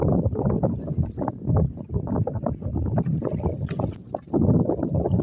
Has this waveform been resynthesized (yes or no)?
no